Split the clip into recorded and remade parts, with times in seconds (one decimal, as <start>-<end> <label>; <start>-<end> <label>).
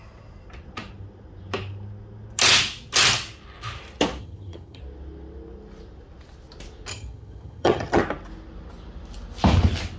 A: 0.0-4.2 recorded; 4.2-4.8 remade; 4.8-6.9 recorded; 6.9-8.0 remade; 8.0-10.0 recorded